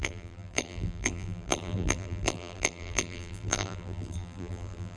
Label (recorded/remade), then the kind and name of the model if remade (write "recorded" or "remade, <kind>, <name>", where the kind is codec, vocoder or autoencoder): remade, vocoder, BigVGAN v2